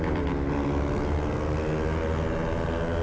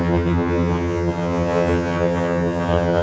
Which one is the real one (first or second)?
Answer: first